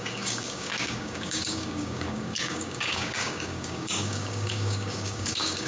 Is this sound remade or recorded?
remade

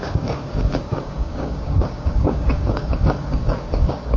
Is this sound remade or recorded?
remade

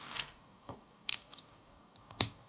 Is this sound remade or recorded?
remade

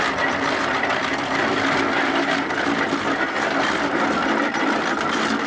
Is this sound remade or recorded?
recorded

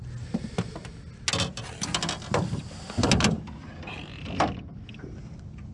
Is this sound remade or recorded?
recorded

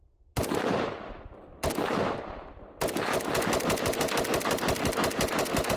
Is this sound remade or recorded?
recorded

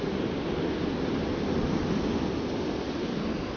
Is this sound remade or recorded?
recorded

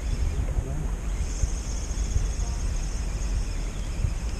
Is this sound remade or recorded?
recorded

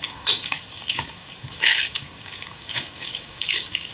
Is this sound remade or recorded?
remade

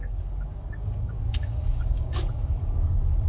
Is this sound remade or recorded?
remade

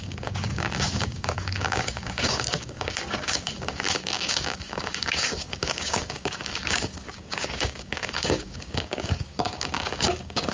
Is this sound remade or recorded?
remade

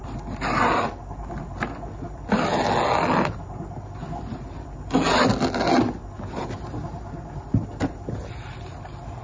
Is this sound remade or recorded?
recorded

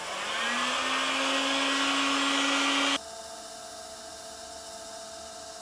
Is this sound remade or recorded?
recorded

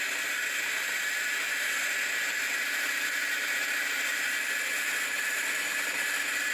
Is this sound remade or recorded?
recorded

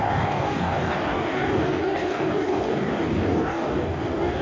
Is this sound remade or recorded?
remade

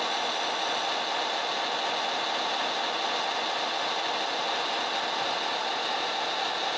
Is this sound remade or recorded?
recorded